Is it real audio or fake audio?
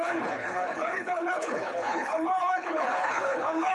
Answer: fake